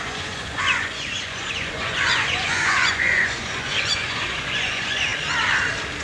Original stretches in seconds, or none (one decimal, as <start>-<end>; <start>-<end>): 5.1-6.0